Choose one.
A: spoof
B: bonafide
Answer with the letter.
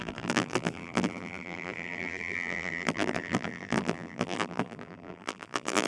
A